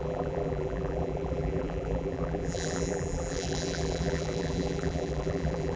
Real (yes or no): no